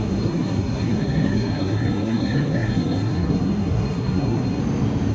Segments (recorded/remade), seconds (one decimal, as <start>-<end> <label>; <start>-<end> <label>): 0.0-4.6 remade; 4.6-5.1 recorded